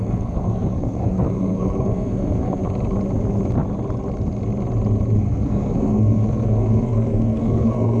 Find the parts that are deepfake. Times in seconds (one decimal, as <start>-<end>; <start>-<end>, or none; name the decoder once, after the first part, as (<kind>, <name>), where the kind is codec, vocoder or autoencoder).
0.0-2.6 (codec, SNAC); 5.2-8.0